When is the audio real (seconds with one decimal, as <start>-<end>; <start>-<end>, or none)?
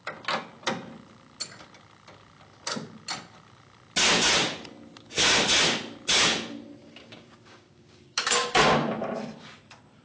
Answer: 0.0-6.8; 8.6-10.0